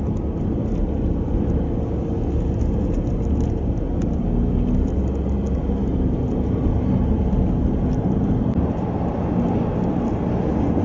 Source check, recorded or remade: recorded